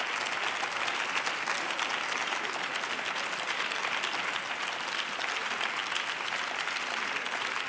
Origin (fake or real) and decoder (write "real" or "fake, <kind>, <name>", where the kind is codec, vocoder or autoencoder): real